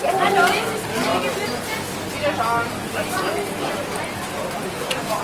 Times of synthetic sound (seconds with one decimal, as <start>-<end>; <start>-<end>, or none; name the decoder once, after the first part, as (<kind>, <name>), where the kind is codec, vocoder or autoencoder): none